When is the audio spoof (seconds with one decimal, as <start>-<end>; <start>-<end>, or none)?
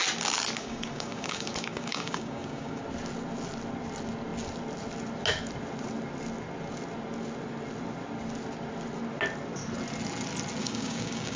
0.6-2.8; 10.6-11.4